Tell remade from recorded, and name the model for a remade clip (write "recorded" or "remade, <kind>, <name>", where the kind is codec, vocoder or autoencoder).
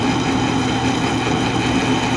recorded